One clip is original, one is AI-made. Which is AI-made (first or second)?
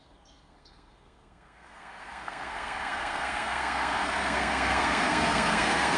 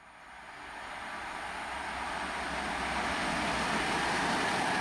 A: first